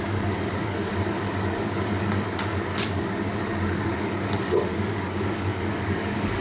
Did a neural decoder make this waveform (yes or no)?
yes